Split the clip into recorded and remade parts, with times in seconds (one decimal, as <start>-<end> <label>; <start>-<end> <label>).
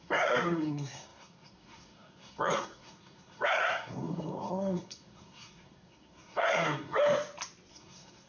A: 0.0-7.0 remade; 7.0-7.7 recorded; 7.7-8.3 remade